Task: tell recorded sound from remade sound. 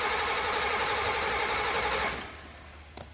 recorded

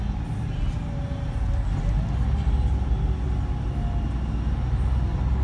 recorded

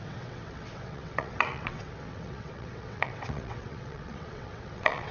remade